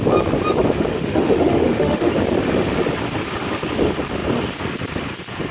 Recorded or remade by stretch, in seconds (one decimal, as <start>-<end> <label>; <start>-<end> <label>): 0.0-0.9 recorded; 0.9-2.1 remade; 2.1-5.5 recorded

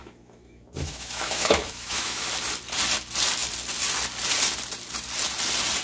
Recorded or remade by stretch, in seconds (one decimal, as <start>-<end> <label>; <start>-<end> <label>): 0.0-2.3 remade; 2.3-5.8 recorded

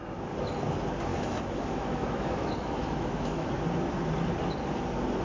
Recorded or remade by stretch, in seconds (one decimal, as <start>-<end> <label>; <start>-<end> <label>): 0.0-1.1 recorded; 1.1-3.5 remade; 3.5-5.2 recorded

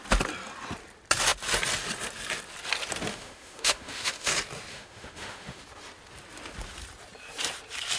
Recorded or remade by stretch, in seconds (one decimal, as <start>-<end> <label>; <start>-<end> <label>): 0.0-3.1 recorded; 3.1-4.3 remade; 4.3-4.7 recorded; 4.7-5.6 remade; 5.6-8.0 recorded

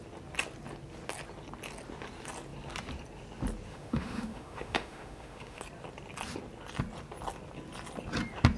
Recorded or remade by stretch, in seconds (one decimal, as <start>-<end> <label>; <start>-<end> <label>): 0.0-3.7 recorded; 3.7-5.6 remade; 5.6-8.6 recorded

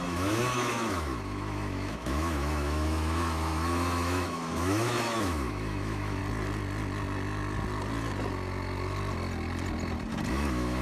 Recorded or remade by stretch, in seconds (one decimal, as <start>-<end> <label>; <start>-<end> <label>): 0.0-6.2 remade; 6.2-10.3 recorded; 10.3-10.8 remade

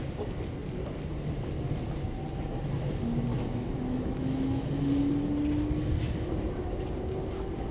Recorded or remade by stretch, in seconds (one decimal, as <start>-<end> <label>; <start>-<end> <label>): 0.0-3.3 recorded; 3.3-4.7 remade; 4.7-7.7 recorded